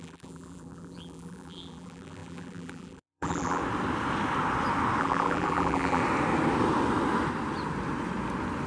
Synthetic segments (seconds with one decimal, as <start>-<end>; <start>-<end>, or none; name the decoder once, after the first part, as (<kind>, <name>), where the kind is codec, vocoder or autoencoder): 0.0-3.6 (vocoder, BigVGAN v2); 5.0-6.0